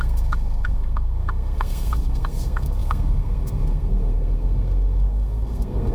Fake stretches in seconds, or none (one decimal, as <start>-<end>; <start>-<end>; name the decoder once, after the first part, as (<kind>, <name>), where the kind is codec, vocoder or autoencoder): 0.0-5.9 (codec, SNAC)